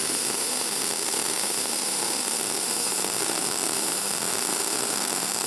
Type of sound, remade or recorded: remade